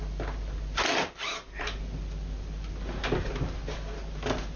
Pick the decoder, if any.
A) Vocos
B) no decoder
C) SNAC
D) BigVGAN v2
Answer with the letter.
B